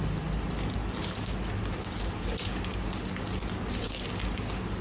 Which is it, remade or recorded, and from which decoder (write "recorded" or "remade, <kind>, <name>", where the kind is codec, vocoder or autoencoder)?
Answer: recorded